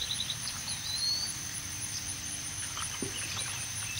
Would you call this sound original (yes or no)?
no